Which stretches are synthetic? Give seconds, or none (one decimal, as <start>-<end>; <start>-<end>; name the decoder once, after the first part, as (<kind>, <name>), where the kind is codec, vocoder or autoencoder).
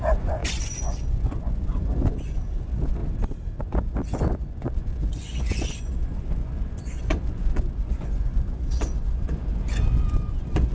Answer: 0.0-3.0 (vocoder, Vocos); 3.6-10.7